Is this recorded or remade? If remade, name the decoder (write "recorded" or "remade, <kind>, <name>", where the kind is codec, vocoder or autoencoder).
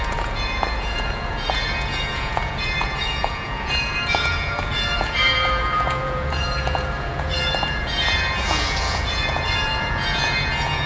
remade, vocoder, Vocos